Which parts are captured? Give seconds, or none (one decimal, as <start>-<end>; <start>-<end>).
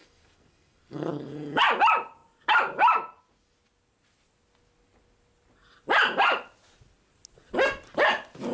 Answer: 1.6-8.5